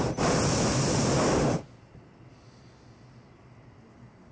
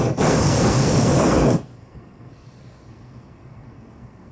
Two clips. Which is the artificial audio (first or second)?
second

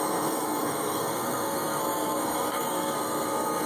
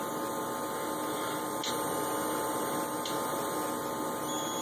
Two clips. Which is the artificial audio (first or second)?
first